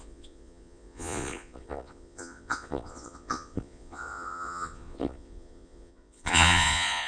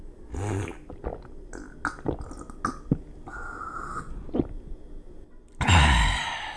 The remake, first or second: first